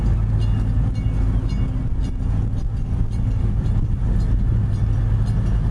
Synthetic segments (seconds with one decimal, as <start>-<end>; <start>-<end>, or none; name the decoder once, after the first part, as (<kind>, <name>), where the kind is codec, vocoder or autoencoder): 2.0-5.0 (vocoder, BigVGAN v2)